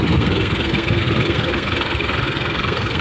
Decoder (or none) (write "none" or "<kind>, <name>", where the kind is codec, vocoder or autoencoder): codec, SNAC